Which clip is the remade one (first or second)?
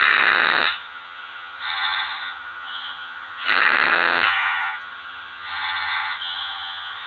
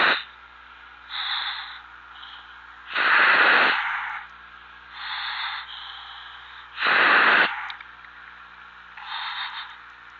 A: first